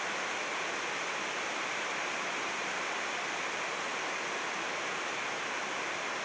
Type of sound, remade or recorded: recorded